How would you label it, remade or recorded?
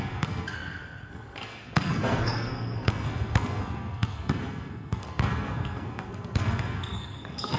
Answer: remade